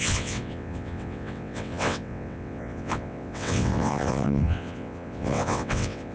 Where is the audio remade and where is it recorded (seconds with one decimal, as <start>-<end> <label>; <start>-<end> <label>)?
0.0-6.1 remade